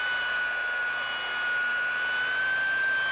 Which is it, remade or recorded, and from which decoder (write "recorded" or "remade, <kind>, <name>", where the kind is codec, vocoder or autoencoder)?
recorded